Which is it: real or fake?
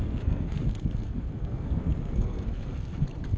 fake